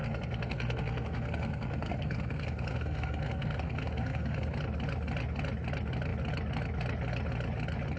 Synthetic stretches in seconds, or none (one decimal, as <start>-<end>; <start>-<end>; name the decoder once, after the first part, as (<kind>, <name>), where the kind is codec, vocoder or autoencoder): 0.0-4.6 (codec, SNAC)